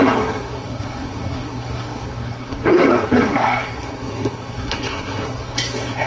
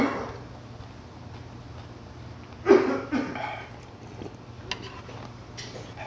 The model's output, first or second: first